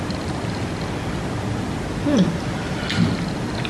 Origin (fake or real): real